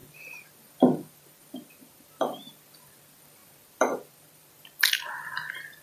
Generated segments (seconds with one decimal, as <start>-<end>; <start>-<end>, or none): 0.0-5.8